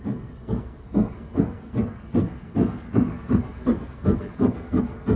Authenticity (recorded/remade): remade